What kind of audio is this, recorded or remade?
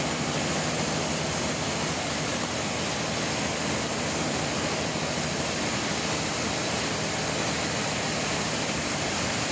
recorded